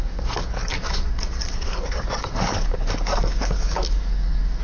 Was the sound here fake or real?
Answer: fake